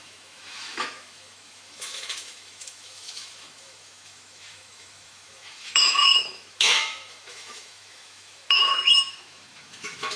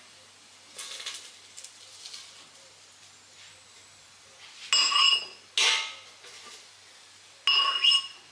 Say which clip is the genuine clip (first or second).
second